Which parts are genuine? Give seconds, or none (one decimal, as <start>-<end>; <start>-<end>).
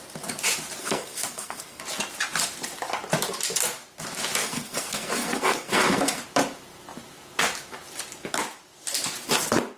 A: 0.0-0.8; 1.8-4.4; 6.2-9.8